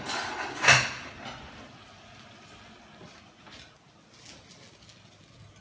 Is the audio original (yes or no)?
yes